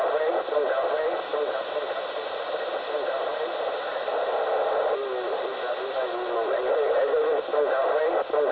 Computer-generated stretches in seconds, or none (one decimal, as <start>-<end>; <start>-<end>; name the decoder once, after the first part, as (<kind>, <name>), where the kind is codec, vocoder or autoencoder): none